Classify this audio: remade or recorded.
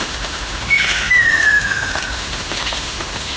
remade